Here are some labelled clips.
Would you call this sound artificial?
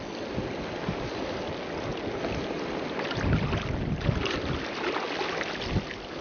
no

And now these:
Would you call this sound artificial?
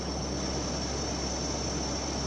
no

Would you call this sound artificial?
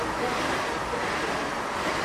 no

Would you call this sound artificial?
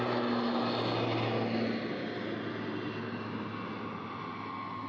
no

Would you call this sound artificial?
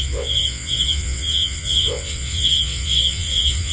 yes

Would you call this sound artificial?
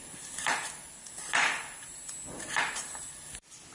no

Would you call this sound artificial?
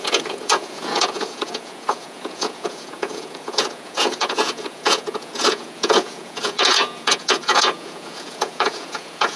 yes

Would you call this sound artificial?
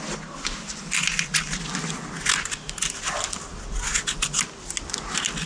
no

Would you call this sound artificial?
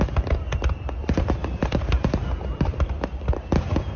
yes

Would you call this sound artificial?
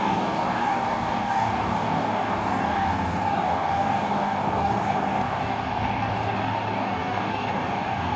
yes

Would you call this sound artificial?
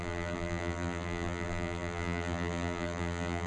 yes